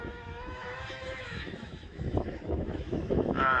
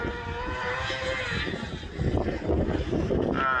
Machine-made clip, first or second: first